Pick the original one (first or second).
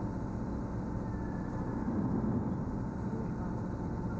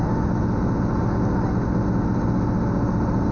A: second